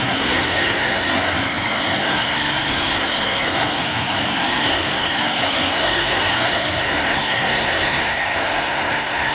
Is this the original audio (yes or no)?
no